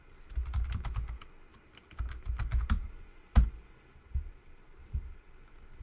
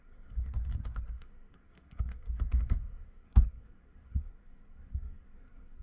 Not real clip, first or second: second